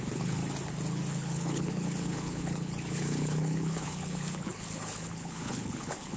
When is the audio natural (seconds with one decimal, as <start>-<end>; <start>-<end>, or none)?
0.4-1.1